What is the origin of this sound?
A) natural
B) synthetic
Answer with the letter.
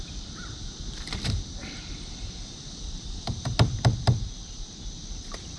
B